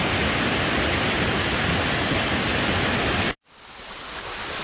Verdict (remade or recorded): recorded